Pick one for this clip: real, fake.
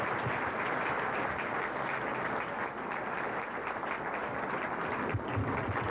real